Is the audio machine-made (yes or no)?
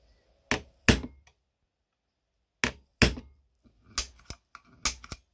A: no